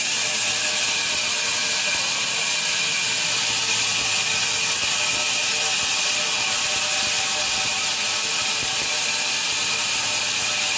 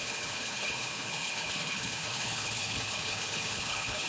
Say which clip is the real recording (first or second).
first